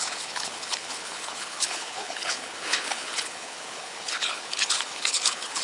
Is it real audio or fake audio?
fake